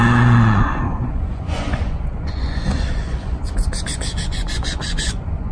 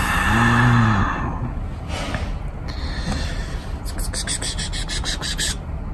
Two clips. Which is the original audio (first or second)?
second